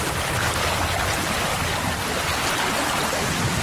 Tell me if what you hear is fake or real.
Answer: real